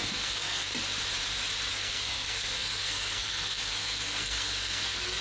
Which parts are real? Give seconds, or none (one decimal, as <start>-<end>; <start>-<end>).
0.7-1.7